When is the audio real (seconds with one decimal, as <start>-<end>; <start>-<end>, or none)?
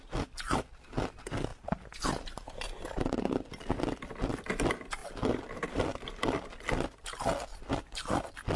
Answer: 0.0-1.5; 3.4-5.0; 6.1-8.6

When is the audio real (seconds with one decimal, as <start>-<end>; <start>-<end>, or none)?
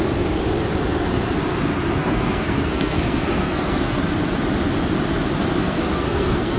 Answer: 0.0-2.0; 4.0-5.6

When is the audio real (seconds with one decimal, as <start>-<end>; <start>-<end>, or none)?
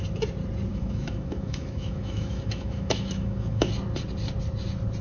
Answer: 0.0-0.7; 3.7-5.0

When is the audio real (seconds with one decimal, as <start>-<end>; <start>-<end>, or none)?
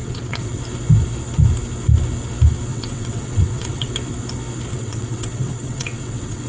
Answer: 0.6-2.7; 3.9-4.7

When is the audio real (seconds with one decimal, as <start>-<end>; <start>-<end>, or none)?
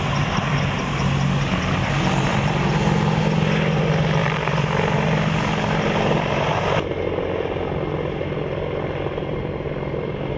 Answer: 0.0-10.4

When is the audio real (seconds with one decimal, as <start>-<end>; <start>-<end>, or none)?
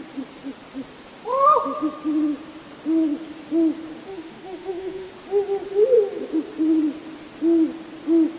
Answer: 0.0-4.1; 5.1-8.4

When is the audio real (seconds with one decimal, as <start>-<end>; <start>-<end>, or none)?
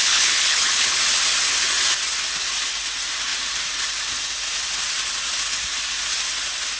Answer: 1.0-6.8